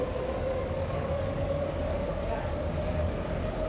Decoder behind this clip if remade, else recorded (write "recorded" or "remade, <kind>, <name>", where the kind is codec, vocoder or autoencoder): remade, codec, DAC